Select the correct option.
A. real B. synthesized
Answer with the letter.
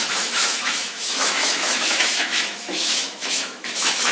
B